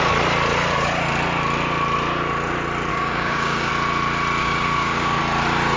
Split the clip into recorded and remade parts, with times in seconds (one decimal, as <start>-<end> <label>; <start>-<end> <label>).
0.0-2.9 recorded; 2.9-3.7 remade; 3.7-4.4 recorded; 4.4-5.2 remade; 5.2-5.8 recorded